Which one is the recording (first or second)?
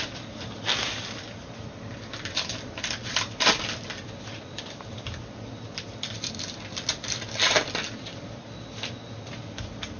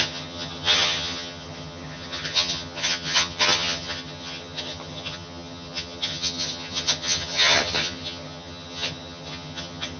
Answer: first